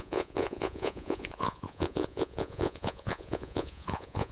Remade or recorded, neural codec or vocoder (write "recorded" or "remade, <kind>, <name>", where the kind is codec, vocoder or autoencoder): remade, vocoder, Vocos